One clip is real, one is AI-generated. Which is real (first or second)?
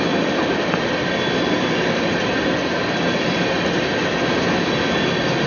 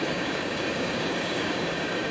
first